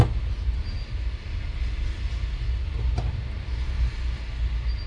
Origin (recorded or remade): recorded